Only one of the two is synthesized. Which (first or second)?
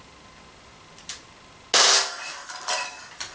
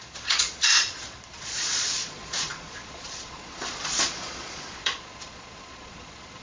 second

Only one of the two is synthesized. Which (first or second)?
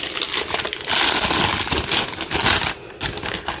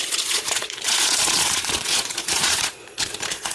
second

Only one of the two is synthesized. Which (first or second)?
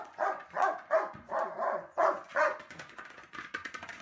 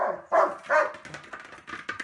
first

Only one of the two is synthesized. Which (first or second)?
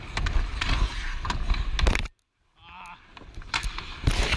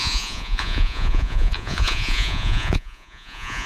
second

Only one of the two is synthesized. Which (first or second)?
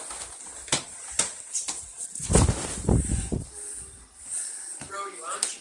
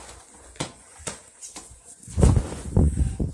second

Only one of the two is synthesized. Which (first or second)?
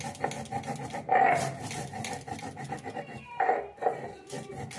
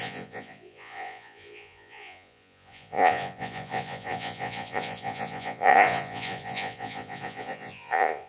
second